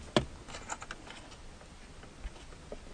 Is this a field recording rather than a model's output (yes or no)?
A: yes